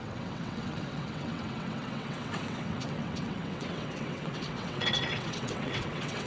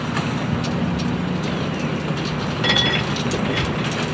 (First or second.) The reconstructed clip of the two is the first